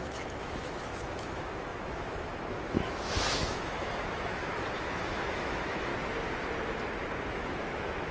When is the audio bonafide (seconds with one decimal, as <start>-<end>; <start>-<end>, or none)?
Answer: 5.9-7.3

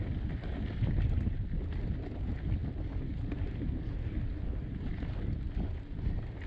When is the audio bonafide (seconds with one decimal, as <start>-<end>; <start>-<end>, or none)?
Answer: 0.0-6.5

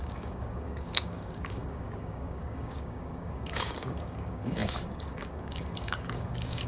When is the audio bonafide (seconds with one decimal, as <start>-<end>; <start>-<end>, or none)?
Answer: none

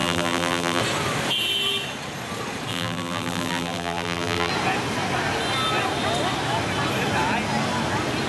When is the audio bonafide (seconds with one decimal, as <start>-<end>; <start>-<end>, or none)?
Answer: 0.8-2.7; 4.5-8.3

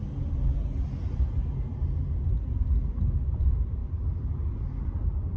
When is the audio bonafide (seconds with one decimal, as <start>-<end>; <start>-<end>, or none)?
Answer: 0.0-5.4

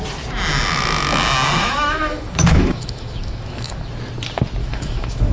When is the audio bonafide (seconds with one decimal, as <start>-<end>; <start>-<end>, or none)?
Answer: 0.0-1.6; 3.9-4.6

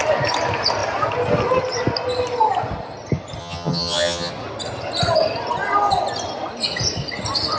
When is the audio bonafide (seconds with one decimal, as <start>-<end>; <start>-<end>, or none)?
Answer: 0.0-3.4; 4.3-7.6

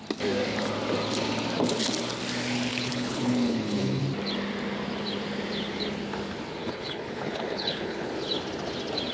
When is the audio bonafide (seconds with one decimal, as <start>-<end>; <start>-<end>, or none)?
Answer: 0.0-2.7; 4.0-6.6; 8.1-9.1